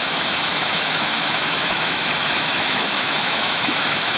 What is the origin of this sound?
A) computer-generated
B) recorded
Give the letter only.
A